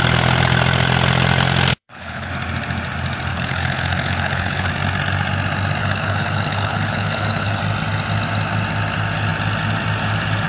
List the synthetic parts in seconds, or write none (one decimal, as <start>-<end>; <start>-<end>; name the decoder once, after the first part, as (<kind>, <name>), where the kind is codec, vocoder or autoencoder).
1.7-2.3 (codec, HILCodec); 3.3-4.7; 5.8-7.6